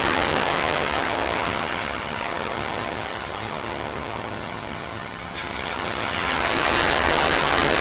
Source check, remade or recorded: remade